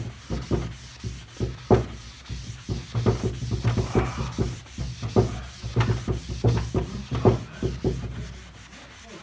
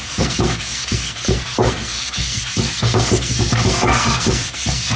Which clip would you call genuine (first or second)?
first